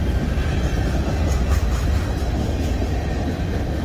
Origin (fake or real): real